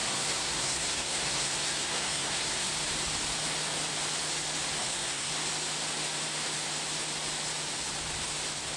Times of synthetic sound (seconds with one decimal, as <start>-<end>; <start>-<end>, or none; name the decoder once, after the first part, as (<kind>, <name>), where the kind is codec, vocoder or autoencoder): 0.0-2.7 (codec, SNAC); 4.8-5.3